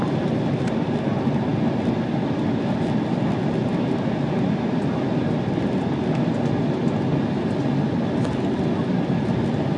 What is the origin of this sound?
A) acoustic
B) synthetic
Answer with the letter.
A